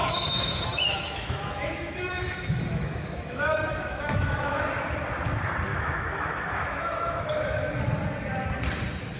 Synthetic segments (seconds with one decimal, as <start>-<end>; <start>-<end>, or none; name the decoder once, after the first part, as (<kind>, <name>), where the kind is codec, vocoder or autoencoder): 0.0-4.6 (autoencoder, DAC-VAE); 5.7-7.7